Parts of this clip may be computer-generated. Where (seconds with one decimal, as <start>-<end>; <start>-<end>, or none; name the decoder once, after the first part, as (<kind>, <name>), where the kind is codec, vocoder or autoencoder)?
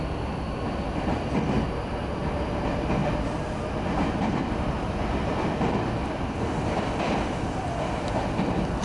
none